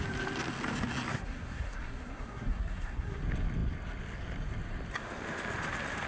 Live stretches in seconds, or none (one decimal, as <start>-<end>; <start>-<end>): 0.0-1.1; 3.2-6.1